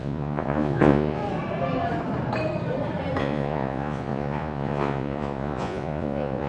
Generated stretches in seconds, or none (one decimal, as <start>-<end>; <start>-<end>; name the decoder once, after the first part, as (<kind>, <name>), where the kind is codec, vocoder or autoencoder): 0.0-1.2 (vocoder, Vocos); 3.2-6.5